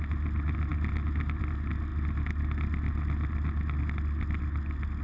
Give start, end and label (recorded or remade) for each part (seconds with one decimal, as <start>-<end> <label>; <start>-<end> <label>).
0.0-5.0 recorded